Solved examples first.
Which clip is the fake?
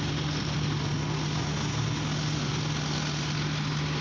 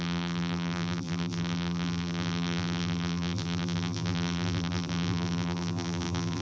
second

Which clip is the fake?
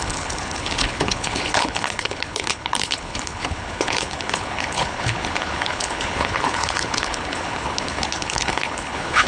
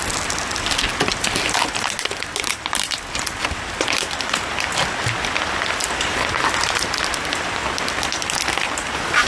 first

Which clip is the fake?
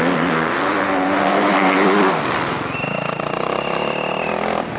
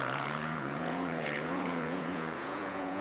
second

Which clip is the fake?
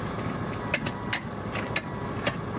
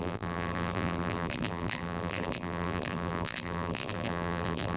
second